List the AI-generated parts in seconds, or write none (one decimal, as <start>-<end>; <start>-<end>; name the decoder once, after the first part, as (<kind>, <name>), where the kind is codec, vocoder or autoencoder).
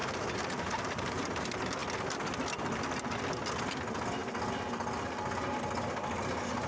0.0-1.4 (vocoder, BigVGAN v2)